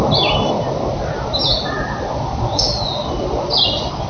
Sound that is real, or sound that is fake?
real